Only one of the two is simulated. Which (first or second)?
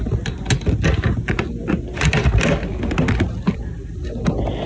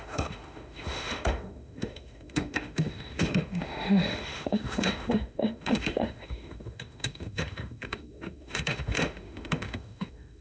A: second